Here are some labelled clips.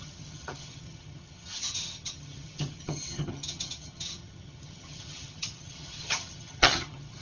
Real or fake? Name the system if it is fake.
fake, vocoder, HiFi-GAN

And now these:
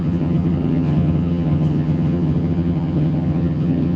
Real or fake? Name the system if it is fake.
fake, vocoder, HiFi-GAN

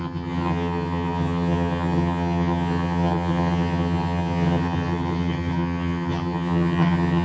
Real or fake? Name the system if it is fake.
fake, vocoder, HiFi-GAN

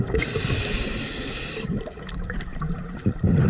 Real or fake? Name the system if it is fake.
real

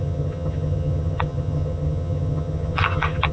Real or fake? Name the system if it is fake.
fake, vocoder, HiFi-GAN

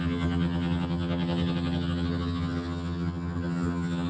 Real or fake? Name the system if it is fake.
fake, vocoder, HiFi-GAN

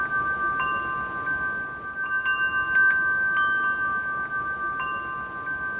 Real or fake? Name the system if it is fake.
real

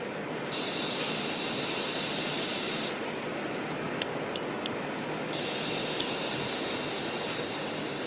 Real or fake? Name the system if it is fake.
real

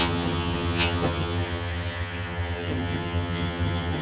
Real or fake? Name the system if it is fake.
fake, vocoder, HiFi-GAN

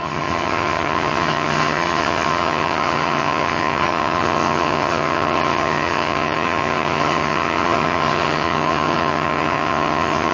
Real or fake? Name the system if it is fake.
fake, vocoder, HiFi-GAN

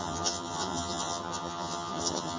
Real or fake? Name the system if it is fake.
fake, vocoder, HiFi-GAN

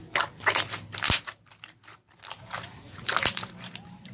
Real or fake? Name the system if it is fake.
real